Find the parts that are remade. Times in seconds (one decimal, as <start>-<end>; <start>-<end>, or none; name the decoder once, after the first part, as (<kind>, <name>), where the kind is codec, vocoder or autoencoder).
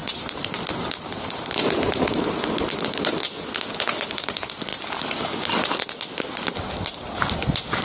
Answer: none